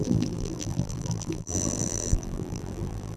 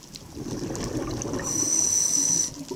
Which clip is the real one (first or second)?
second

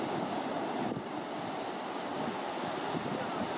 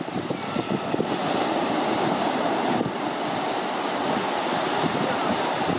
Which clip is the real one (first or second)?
first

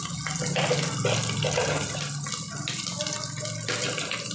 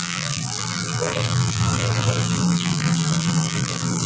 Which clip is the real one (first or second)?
first